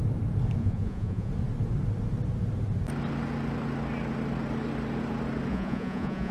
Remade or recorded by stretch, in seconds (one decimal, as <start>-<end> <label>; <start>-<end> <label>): 0.0-0.6 recorded; 0.6-1.3 remade; 1.3-5.5 recorded; 5.5-6.3 remade